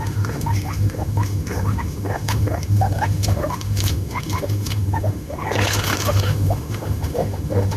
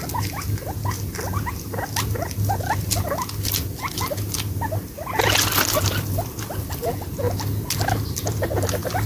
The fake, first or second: first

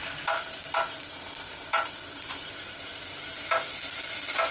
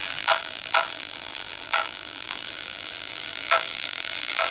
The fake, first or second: second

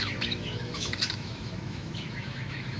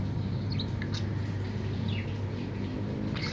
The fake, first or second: first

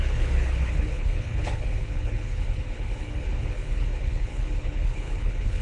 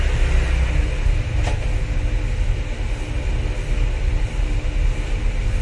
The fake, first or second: first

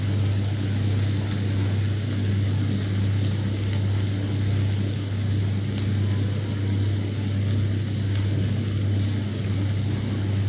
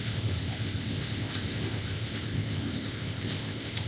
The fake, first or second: second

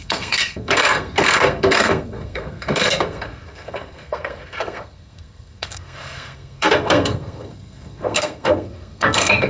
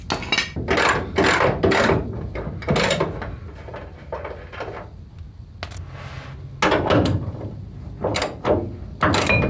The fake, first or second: first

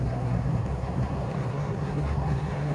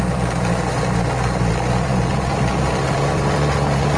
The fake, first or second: first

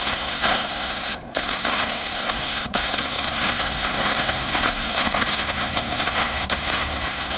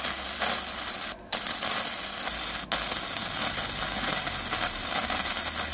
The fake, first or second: first